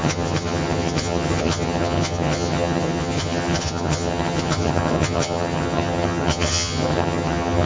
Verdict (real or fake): fake